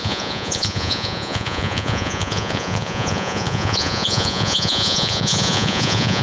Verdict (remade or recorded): remade